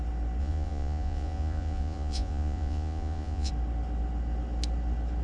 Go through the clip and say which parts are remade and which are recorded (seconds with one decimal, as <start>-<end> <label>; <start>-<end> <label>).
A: 0.0-0.4 recorded; 0.4-3.5 remade; 3.5-5.2 recorded